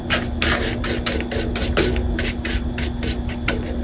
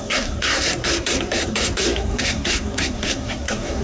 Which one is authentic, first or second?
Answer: first